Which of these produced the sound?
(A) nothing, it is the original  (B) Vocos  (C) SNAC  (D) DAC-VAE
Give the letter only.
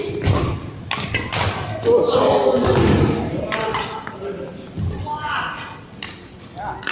A